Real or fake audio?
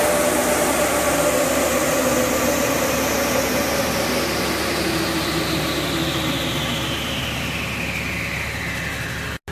real